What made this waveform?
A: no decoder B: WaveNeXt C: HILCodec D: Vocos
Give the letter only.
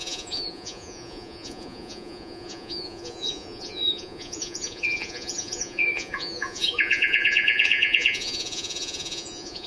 D